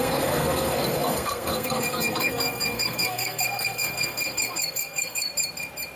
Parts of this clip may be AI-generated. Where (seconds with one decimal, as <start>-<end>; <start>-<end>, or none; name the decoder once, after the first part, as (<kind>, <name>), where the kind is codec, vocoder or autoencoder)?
0.0-5.3 (codec, SNAC)